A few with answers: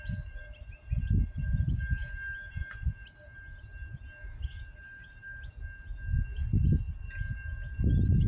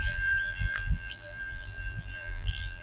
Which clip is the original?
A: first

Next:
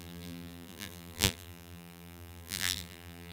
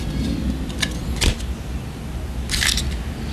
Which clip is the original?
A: second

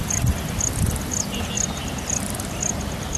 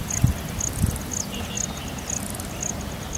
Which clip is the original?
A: second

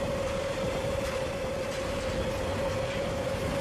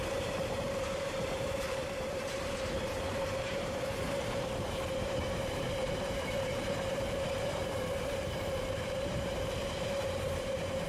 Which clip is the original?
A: first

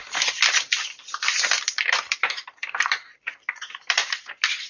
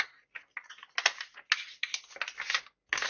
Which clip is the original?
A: second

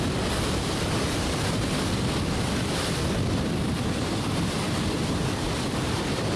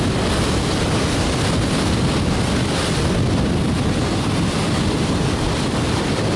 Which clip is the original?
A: second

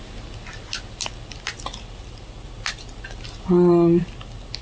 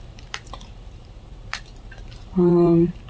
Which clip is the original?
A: first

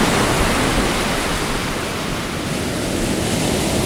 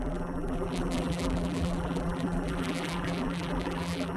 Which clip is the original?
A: first